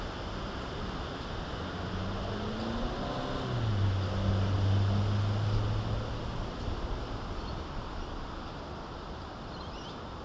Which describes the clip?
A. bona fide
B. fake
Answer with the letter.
A